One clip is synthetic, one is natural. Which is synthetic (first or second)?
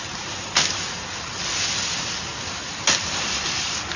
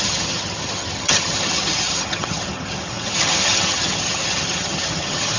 second